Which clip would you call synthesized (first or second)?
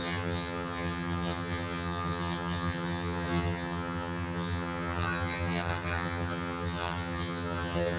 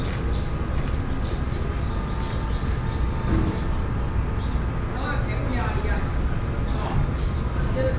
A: first